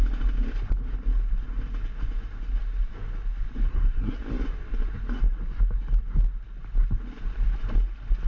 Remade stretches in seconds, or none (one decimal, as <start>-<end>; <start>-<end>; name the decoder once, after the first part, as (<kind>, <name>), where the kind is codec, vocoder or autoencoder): 3.7-4.2 (codec, SNAC)